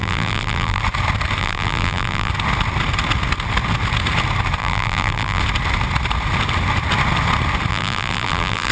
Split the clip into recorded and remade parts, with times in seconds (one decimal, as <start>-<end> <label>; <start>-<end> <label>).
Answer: 0.0-0.8 remade; 0.8-1.4 recorded; 1.4-2.3 remade; 2.3-4.6 recorded; 4.6-5.4 remade; 5.4-7.7 recorded; 7.7-8.7 remade